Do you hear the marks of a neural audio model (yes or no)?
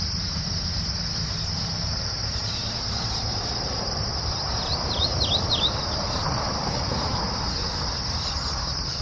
yes